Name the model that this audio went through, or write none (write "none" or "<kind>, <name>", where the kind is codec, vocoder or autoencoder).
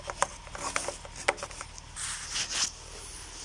none